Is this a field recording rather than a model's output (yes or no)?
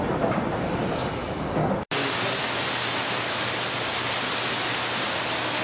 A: yes